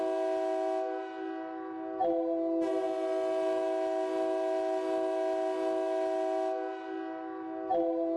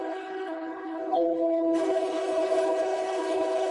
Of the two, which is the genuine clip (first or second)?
first